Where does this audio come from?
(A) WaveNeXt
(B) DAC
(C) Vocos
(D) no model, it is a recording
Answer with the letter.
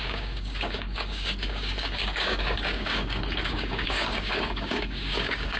B